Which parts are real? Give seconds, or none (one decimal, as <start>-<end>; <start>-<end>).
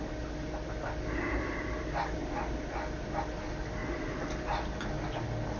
0.0-5.6